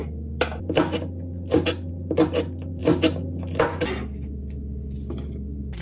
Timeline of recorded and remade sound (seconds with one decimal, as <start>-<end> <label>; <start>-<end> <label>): 0.0-5.8 recorded